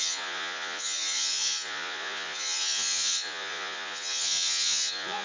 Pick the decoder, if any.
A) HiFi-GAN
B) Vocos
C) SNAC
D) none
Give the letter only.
B